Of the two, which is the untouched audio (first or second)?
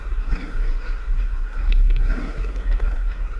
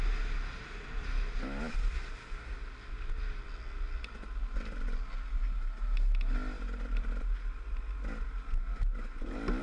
second